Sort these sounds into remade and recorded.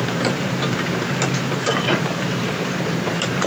remade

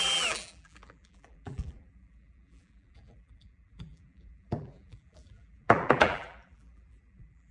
remade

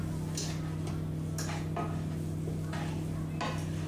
recorded